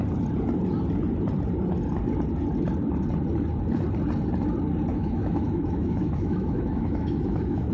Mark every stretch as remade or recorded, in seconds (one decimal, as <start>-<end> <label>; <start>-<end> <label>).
0.0-4.9 recorded; 4.9-7.7 remade